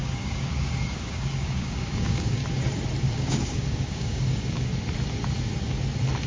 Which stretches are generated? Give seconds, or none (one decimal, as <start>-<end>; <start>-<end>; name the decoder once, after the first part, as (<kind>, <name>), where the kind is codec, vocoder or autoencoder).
0.0-2.4 (codec, DAC); 3.0-4.7